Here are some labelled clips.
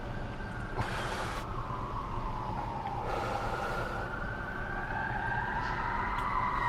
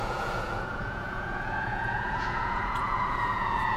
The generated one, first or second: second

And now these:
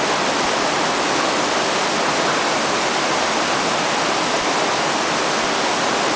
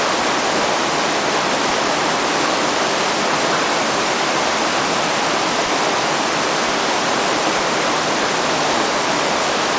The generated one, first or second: second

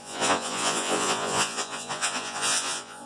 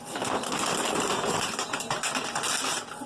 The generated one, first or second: first